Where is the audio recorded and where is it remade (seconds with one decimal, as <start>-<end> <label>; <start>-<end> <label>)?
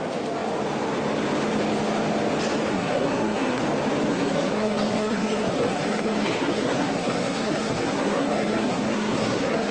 0.0-2.7 recorded; 2.7-3.6 remade; 3.6-4.1 recorded; 4.1-9.7 remade